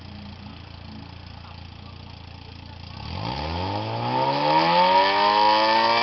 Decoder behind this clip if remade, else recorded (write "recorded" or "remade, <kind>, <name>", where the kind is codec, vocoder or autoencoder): recorded